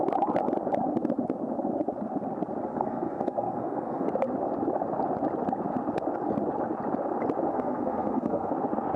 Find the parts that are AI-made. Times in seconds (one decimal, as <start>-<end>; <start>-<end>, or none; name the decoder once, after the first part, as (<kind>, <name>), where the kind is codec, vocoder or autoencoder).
2.7-4.1 (codec, SNAC); 7.5-8.5